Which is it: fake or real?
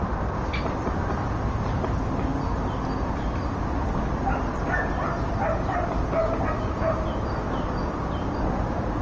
real